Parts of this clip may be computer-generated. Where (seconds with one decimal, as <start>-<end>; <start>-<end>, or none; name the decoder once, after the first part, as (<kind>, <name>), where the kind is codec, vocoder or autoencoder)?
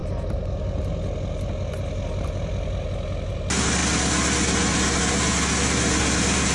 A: none